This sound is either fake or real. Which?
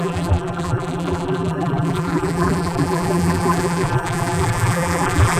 fake